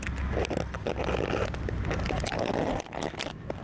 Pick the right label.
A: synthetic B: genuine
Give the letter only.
B